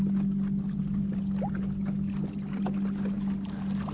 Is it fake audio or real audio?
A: real